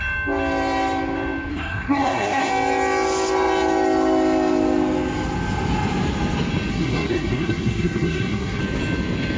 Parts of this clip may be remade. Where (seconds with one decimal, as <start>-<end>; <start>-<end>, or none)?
1.5-2.5; 6.7-8.6